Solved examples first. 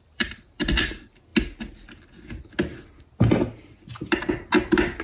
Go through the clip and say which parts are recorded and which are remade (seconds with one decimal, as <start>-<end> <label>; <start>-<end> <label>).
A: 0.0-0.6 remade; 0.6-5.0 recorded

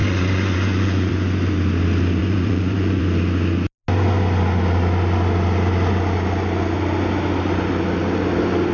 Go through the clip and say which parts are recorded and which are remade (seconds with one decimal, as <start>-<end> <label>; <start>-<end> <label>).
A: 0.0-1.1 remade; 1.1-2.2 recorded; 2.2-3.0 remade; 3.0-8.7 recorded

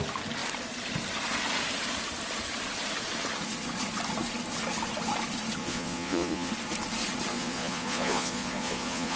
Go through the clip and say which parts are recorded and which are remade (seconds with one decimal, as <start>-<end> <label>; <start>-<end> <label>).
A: 0.0-5.6 recorded; 5.6-6.5 remade; 6.5-7.3 recorded; 7.3-9.2 remade

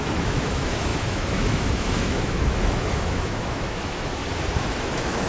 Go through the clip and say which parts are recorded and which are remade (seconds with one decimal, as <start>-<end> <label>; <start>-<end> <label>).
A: 0.0-4.2 remade; 4.2-4.7 recorded; 4.7-5.3 remade

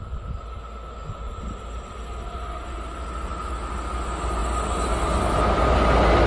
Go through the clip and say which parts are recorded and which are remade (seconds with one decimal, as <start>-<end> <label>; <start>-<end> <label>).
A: 0.0-6.3 recorded